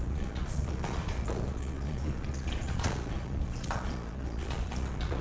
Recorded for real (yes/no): no